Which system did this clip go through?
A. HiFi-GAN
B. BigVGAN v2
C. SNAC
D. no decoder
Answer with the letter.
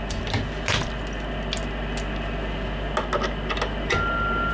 D